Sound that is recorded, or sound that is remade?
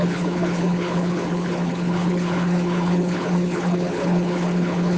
remade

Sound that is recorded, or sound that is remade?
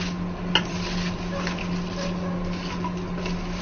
recorded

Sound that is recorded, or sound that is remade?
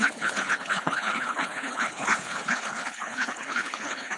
remade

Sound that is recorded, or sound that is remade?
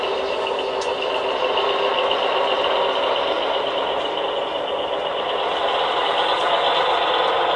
recorded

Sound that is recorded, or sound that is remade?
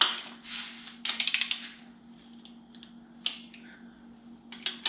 recorded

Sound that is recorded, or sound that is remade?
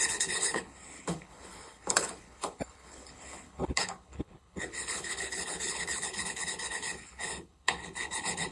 remade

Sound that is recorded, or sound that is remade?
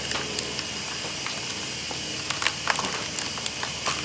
recorded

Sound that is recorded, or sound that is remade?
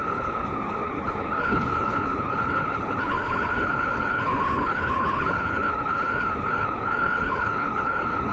remade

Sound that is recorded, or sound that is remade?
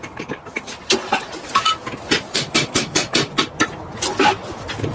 recorded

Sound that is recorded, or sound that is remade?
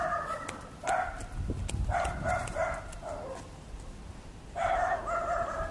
recorded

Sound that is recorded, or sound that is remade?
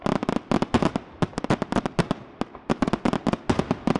recorded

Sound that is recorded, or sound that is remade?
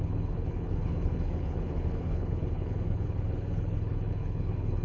remade